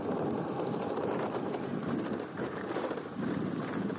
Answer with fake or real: fake